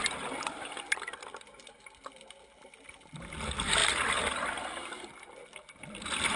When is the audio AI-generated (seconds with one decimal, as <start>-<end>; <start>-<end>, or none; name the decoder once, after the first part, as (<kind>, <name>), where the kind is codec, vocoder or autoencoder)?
none